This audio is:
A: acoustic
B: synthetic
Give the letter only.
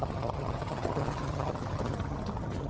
B